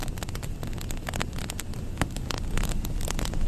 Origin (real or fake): real